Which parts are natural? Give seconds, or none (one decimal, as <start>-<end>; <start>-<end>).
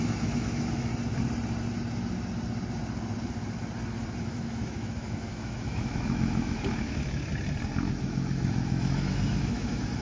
0.9-4.2; 7.3-7.9